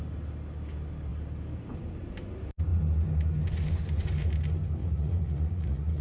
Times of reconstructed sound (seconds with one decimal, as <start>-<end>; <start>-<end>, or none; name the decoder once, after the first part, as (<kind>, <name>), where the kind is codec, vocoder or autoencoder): 4.8-6.0 (vocoder, Vocos)